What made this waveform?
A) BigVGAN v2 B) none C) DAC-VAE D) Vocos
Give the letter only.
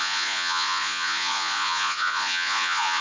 D